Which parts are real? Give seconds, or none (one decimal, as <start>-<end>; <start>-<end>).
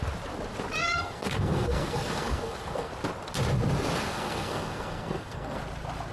0.0-0.8; 2.9-4.1; 5.6-6.1